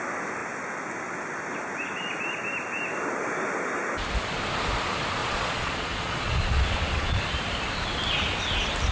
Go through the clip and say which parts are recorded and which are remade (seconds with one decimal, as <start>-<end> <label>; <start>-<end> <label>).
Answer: 0.0-5.2 recorded; 5.2-7.2 remade; 7.2-8.9 recorded